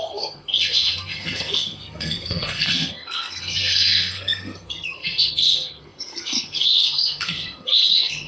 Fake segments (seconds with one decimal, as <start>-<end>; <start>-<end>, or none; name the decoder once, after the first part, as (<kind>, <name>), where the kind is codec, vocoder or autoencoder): 0.0-8.3 (codec, SNAC)